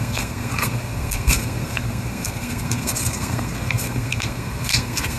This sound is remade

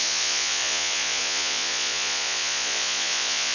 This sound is remade